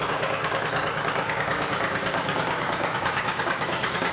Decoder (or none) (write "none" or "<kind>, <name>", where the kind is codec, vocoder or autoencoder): codec, DAC